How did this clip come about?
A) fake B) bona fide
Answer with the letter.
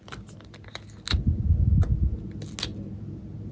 B